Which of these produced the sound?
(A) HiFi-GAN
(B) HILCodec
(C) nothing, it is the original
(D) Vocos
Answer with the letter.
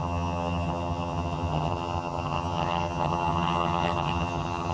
A